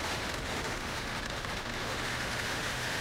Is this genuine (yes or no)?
no